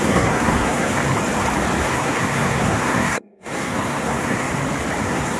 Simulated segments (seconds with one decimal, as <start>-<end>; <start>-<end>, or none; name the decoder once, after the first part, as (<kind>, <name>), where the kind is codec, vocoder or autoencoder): 0.0-1.0 (codec, SNAC); 1.8-4.5; 5.0-5.4